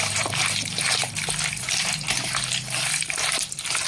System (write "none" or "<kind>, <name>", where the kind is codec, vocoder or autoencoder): vocoder, BigVGAN v2